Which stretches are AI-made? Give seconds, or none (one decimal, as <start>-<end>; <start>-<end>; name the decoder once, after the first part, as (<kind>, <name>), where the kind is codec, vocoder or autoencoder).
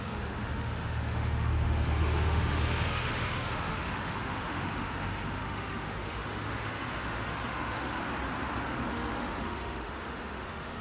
0.0-8.0 (autoencoder, DAC-VAE); 8.9-10.8